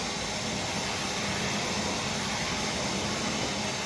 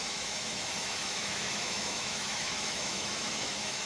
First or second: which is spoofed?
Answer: second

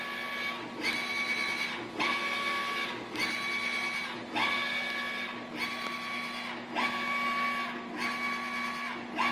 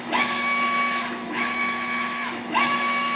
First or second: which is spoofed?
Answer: second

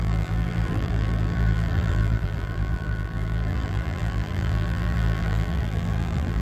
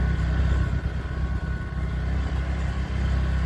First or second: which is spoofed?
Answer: first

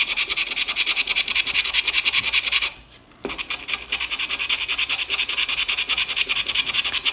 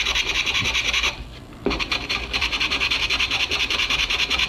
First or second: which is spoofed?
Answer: second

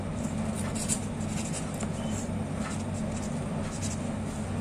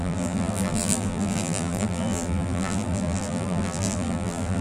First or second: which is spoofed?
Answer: second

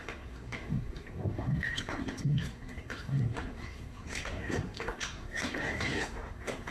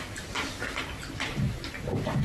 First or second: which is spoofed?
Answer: first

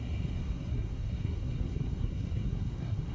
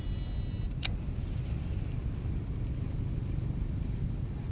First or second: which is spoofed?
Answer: first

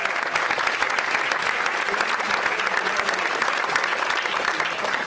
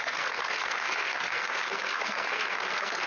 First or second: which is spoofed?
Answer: second